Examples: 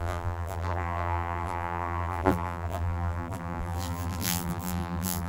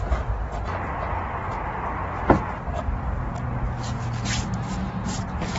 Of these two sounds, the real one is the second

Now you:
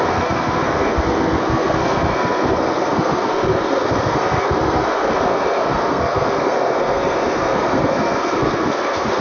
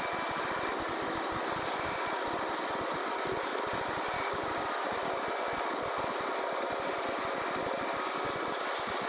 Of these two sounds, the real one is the second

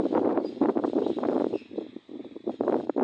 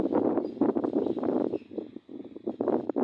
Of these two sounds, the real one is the second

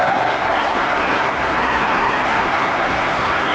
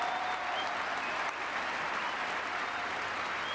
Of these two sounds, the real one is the second